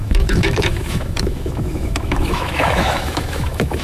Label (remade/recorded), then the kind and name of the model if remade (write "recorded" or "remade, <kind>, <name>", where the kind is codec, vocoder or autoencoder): remade, autoencoder, DAC-VAE